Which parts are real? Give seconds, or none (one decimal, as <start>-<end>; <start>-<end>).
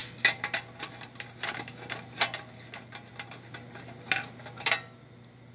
0.0-5.5